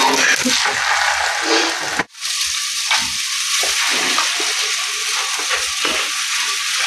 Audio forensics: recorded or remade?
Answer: recorded